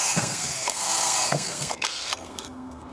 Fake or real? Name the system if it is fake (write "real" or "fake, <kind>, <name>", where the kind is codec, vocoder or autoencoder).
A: fake, codec, SNAC